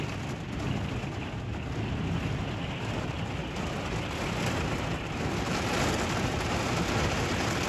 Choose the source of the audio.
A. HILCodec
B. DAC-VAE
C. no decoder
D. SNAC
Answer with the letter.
C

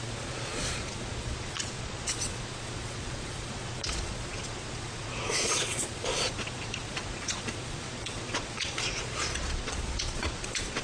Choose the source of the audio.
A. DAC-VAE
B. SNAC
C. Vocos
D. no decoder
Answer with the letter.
C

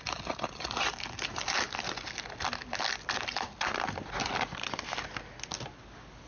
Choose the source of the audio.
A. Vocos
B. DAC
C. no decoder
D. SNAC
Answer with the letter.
C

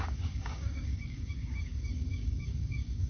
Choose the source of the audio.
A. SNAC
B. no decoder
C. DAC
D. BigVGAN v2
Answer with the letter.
C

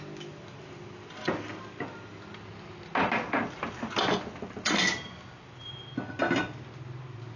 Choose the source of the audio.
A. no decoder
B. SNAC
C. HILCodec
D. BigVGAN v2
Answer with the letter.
A